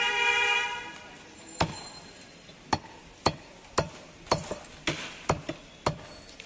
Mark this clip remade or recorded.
recorded